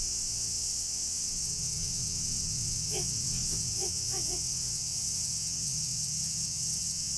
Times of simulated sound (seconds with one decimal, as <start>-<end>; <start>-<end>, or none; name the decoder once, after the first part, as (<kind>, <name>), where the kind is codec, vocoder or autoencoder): 0.0-7.2 (vocoder, WaveNeXt)